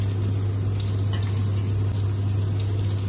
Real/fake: real